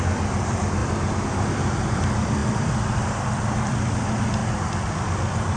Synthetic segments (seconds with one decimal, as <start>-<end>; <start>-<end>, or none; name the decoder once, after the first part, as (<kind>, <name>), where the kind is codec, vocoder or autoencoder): 0.0-0.8 (vocoder, BigVGAN v2); 1.3-4.4; 4.9-5.6